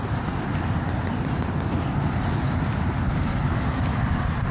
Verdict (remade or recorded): recorded